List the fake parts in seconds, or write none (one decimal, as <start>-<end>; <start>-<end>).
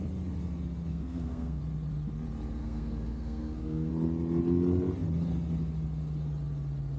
0.9-1.6; 2.6-3.9